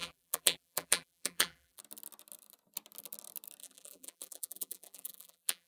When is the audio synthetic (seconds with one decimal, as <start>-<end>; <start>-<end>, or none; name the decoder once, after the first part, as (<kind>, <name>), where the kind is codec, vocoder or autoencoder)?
0.0-1.8 (vocoder, BigVGAN v2); 3.6-5.7